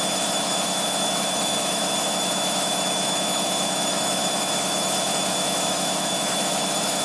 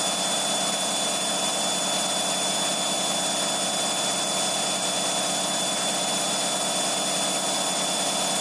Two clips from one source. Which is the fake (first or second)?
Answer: first